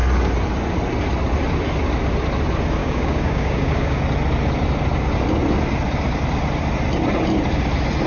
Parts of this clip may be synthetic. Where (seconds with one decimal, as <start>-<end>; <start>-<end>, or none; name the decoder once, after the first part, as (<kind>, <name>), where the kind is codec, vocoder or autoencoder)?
2.8-4.0 (codec, DAC)